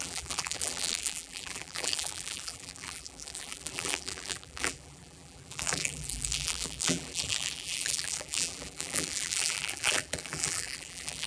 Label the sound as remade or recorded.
remade